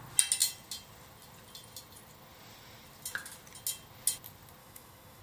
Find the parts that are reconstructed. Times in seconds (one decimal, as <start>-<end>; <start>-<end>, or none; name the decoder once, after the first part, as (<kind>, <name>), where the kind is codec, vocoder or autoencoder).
4.6-5.2 (autoencoder, DAC-VAE)